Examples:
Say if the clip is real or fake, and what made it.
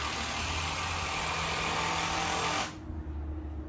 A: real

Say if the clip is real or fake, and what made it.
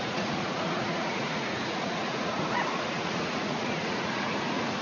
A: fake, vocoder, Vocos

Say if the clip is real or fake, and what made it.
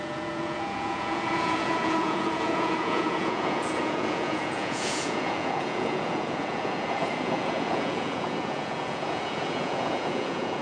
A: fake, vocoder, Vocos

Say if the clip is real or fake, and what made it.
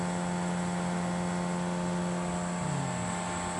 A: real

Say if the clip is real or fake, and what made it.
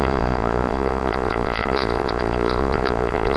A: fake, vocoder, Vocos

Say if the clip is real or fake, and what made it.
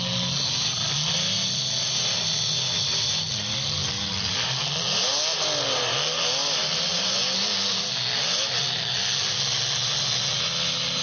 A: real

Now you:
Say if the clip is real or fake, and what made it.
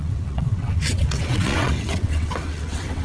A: fake, vocoder, WaveNeXt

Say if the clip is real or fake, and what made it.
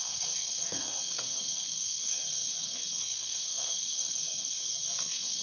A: fake, codec, SNAC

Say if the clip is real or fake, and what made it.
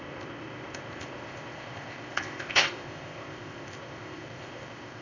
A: fake, codec, ZipCodec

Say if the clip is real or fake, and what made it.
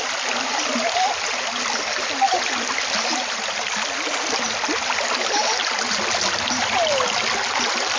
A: real